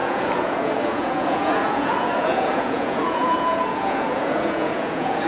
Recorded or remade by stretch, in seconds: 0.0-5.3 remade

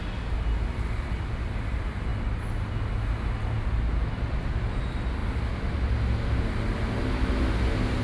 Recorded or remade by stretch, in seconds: 0.0-8.0 recorded

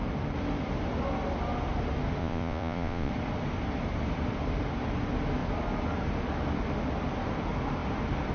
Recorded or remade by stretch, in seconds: 0.0-2.2 recorded; 2.2-3.1 remade; 3.1-8.3 recorded

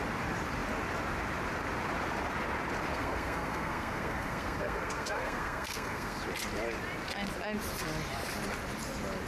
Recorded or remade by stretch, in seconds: 0.0-2.9 recorded; 2.9-6.2 remade; 6.2-9.3 recorded